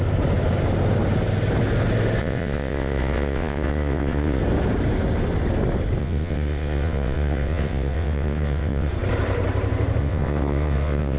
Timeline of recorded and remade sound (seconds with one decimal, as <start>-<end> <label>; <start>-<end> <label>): 0.0-2.2 recorded; 2.2-4.4 remade; 4.4-6.0 recorded; 6.0-8.9 remade; 8.9-10.0 recorded; 10.0-11.2 remade